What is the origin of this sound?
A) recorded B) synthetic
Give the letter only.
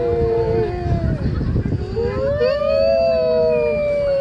A